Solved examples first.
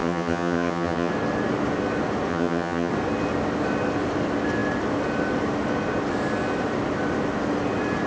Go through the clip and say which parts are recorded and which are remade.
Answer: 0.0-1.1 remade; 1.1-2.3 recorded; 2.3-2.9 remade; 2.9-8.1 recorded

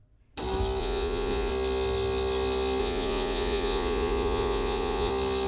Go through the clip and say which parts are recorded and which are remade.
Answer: 0.0-0.8 recorded; 0.8-1.5 remade; 1.5-2.8 recorded; 2.8-5.1 remade; 5.1-5.5 recorded